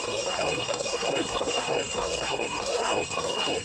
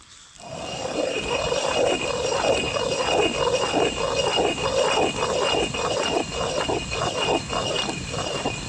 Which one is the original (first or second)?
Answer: second